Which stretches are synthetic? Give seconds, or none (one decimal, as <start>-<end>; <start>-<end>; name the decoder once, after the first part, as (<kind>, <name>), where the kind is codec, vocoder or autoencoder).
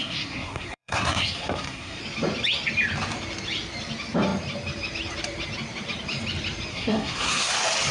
0.0-2.0 (codec, SNAC); 6.7-7.5